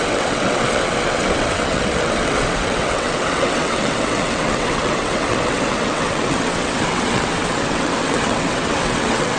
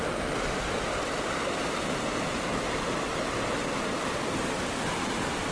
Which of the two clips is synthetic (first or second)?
first